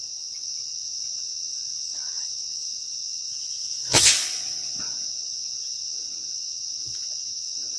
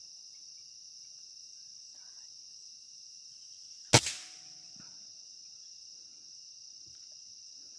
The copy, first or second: first